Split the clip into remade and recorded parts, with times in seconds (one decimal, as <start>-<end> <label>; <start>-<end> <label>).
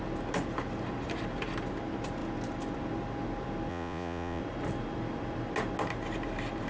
0.0-3.7 recorded; 3.7-4.4 remade; 4.4-6.7 recorded